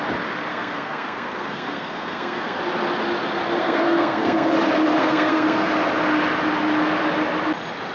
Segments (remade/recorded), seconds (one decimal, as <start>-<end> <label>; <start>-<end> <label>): 0.0-0.5 recorded; 0.5-2.6 remade; 2.6-3.6 recorded; 3.6-4.5 remade; 4.5-5.0 recorded; 5.0-5.7 remade; 5.7-7.9 recorded